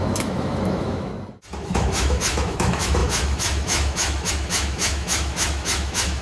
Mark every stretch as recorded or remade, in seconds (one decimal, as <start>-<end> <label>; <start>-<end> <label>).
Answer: 0.0-1.1 remade; 1.1-1.6 recorded; 1.6-6.2 remade